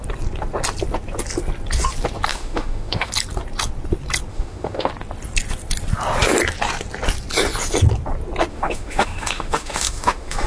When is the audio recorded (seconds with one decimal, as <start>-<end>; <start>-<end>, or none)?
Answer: 0.0-2.3; 3.1-4.3; 4.9-8.5